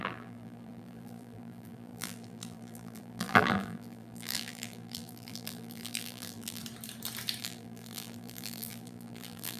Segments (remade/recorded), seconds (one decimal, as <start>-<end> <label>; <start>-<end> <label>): 0.0-6.6 remade; 6.6-7.4 recorded; 7.4-9.6 remade